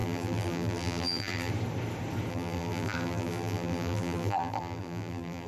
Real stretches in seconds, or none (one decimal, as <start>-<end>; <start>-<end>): 1.5-2.3